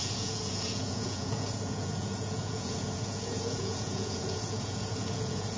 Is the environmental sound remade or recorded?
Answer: remade